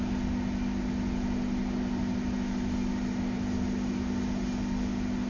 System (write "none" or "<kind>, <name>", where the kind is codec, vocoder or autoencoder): none